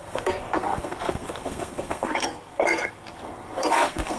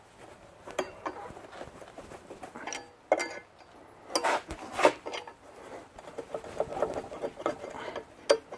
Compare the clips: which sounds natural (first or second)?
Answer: second